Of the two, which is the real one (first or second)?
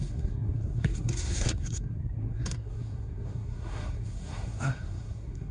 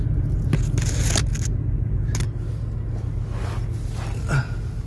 second